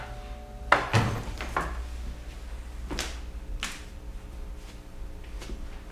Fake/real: real